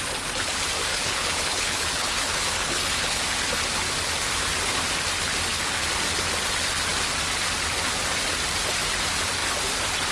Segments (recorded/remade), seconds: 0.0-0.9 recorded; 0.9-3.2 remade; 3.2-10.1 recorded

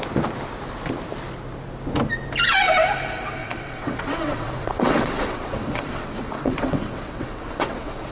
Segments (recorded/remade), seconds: 0.0-3.4 recorded; 3.4-8.1 remade

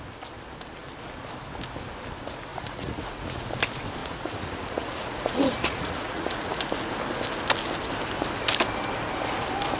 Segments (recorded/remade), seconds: 0.0-2.5 recorded; 2.5-3.5 remade; 3.5-4.0 recorded; 4.0-6.5 remade; 6.5-9.8 recorded